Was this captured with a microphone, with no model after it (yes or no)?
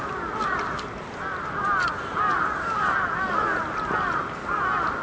yes